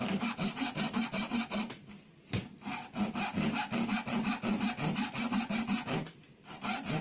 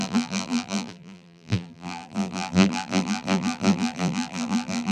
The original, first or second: first